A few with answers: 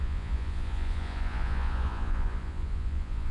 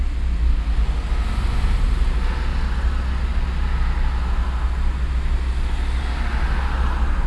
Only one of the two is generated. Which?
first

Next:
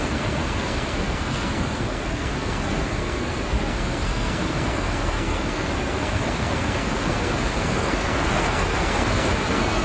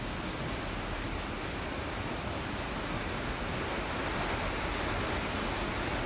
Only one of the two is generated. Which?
first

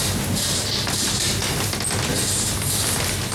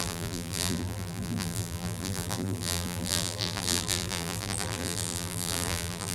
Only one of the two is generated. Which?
second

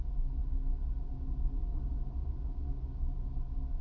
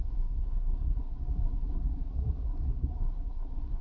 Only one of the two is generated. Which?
second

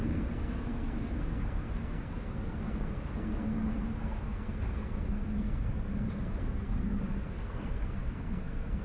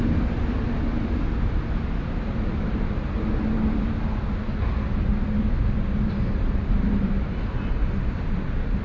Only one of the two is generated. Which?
first